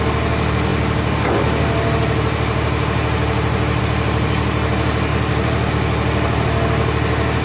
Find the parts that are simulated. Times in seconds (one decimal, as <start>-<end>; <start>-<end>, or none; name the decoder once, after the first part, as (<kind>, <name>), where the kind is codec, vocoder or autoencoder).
5.1-5.7 (vocoder, BigVGAN v2)